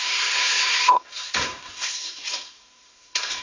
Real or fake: fake